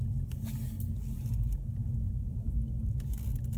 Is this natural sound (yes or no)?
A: yes